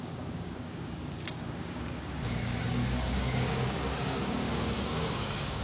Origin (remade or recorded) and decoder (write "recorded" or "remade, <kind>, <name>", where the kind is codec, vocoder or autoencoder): remade, codec, DAC